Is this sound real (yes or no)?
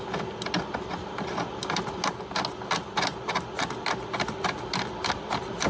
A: yes